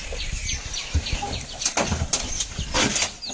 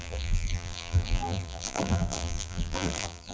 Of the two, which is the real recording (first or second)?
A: first